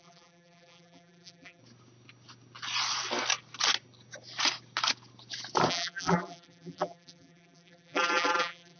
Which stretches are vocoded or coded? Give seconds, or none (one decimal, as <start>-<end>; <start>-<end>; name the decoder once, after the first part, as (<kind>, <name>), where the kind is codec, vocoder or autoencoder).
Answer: 0.0-1.6 (vocoder, BigVGAN v2); 5.7-8.8